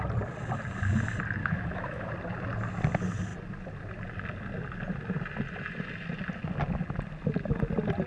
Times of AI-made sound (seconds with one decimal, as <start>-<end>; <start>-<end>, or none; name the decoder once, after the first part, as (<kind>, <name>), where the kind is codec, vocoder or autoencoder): 1.4-2.1 (autoencoder, DAC-VAE)